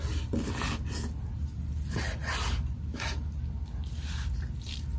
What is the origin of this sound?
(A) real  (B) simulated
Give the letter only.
A